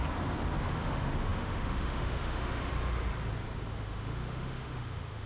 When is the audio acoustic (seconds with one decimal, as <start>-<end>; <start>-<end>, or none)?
0.0-0.7; 2.7-3.7